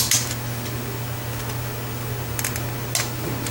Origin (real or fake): real